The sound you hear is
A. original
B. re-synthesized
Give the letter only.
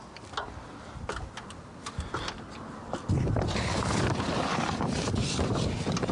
A